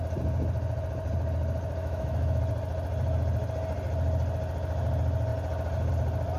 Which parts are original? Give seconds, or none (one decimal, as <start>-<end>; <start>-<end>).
0.0-1.8; 2.4-6.4